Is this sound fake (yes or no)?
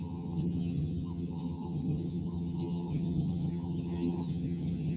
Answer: yes